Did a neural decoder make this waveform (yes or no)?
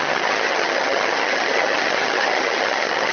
yes